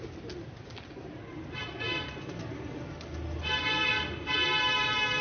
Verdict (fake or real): real